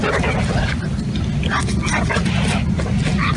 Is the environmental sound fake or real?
real